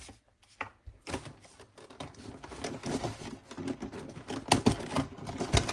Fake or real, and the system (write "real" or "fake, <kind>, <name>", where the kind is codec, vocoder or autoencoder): real